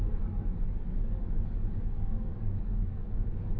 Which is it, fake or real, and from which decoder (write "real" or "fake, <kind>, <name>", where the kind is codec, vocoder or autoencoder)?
fake, codec, DAC